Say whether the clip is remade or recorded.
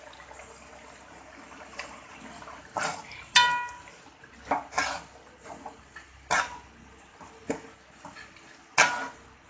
recorded